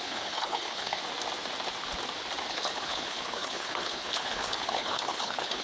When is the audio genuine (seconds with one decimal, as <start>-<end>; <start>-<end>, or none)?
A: 1.0-2.5